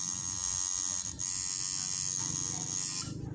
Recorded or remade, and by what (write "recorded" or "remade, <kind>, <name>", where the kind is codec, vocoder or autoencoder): recorded